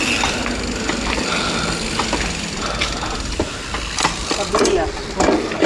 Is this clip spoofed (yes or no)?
no